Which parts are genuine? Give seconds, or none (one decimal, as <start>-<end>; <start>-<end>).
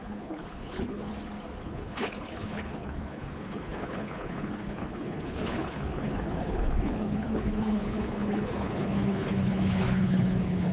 1.1-1.6